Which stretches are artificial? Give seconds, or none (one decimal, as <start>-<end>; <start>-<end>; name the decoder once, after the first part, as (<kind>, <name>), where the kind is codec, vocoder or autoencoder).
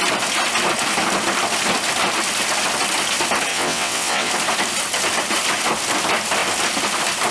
3.5-4.3 (vocoder, WaveNeXt)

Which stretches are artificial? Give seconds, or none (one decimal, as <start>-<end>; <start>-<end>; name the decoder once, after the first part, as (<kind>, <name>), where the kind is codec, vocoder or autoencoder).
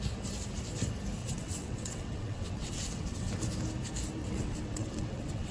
1.2-3.3 (vocoder, WaveNeXt); 4.2-5.5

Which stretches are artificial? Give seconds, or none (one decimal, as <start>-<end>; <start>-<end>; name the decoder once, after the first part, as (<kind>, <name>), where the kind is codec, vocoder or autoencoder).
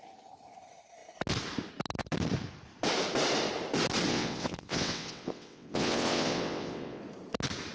4.1-7.0 (vocoder, WaveNeXt)